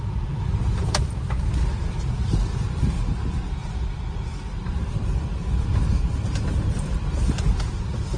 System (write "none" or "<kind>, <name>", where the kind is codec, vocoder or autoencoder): none